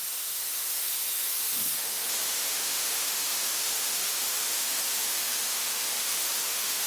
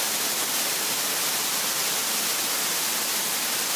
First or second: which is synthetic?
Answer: first